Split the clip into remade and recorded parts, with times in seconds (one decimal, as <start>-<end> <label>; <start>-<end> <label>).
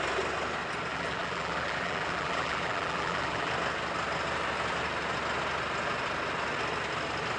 0.0-0.9 recorded; 0.9-3.5 remade; 3.5-7.4 recorded